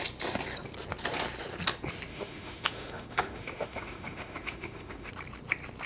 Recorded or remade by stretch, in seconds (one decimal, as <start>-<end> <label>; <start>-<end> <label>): 0.0-2.1 recorded; 2.1-5.1 remade; 5.1-5.9 recorded